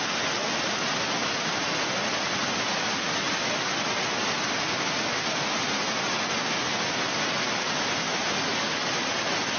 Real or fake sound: real